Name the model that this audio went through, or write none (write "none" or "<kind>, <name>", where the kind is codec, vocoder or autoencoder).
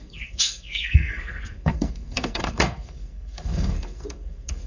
codec, SNAC